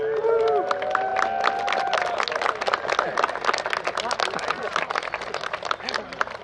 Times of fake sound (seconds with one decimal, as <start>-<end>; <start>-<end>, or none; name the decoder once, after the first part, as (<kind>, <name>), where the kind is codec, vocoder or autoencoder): none